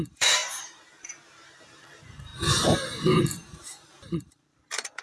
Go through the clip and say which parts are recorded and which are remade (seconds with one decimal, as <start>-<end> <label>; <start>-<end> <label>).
0.0-2.3 remade; 2.3-3.2 recorded; 3.2-5.0 remade